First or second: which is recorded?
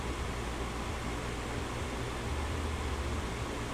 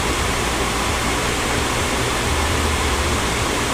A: first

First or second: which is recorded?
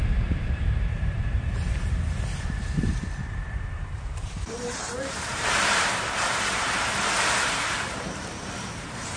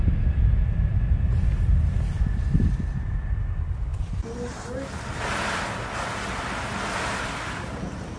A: second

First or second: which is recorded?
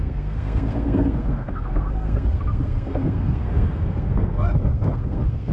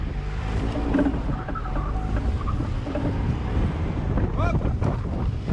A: second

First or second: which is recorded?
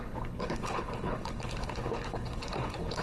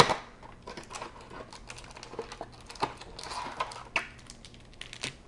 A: second